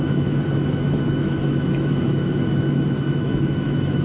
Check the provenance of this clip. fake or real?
fake